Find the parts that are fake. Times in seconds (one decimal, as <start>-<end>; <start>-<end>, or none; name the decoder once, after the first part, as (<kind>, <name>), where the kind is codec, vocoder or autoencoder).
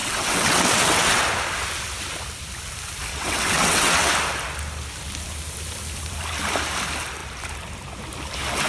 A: 0.0-1.2 (vocoder, WaveNeXt); 3.1-4.1